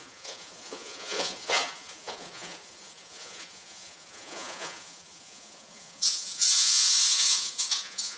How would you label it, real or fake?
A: fake